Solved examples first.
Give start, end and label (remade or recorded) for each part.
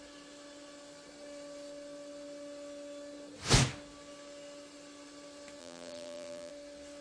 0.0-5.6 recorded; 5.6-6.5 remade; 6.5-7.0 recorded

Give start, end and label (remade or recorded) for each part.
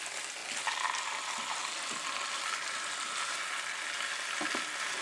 0.0-5.0 recorded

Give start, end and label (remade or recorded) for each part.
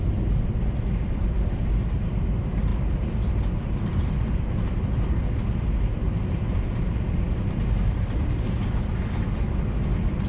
0.0-2.7 recorded; 2.7-4.5 remade; 4.5-6.0 recorded; 6.0-8.5 remade; 8.5-10.3 recorded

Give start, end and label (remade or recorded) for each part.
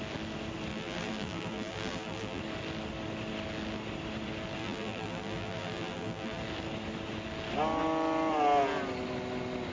0.0-0.7 recorded; 0.7-2.4 remade; 2.4-4.6 recorded; 4.6-6.4 remade; 6.4-9.7 recorded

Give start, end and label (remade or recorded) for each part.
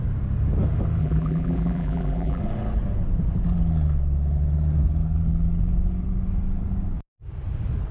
0.0-1.0 recorded; 1.0-2.4 remade; 2.4-7.9 recorded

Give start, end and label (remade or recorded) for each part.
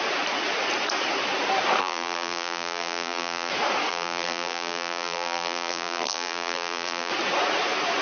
0.0-1.8 recorded; 1.8-3.5 remade; 3.5-3.9 recorded; 3.9-7.1 remade; 7.1-8.0 recorded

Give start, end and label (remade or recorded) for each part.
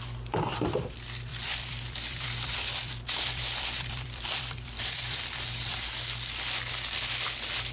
0.0-1.3 recorded; 1.3-5.9 remade; 5.9-7.7 recorded